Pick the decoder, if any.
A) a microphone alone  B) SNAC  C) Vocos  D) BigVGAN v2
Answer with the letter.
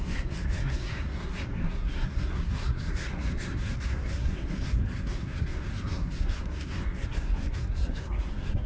B